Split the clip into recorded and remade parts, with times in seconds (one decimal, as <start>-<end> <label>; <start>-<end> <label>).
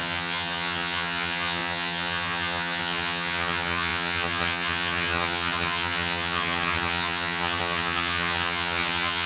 0.0-9.3 remade